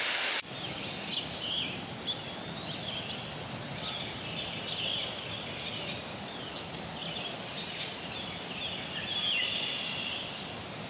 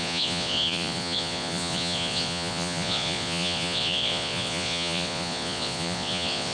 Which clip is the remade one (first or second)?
second